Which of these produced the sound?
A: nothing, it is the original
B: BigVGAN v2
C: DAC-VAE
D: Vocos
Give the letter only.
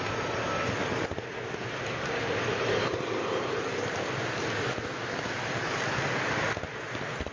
A